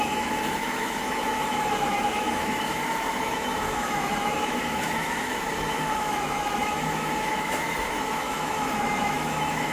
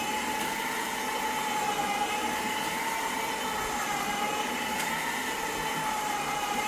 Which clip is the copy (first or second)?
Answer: first